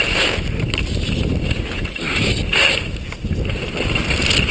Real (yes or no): yes